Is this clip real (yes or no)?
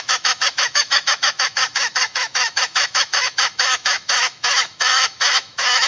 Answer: no